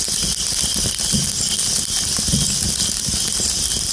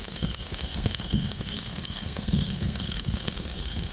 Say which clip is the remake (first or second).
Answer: second